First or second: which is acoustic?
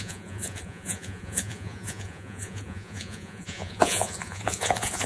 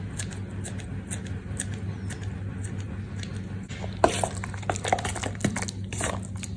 second